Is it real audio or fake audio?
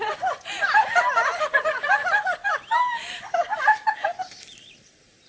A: fake